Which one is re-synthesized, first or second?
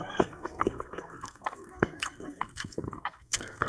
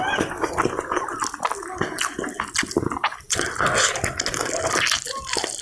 first